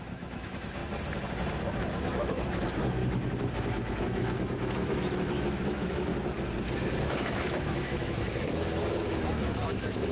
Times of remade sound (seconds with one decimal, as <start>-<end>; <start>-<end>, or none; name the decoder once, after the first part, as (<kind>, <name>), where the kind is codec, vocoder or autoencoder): 0.0-0.8 (autoencoder, DAC-VAE); 1.8-3.0; 3.6-6.1; 7.0-10.1